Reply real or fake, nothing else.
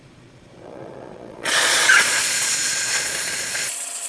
fake